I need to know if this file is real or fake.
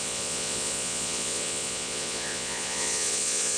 fake